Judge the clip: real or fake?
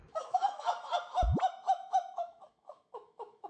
fake